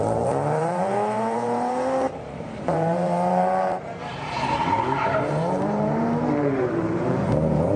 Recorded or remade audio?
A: remade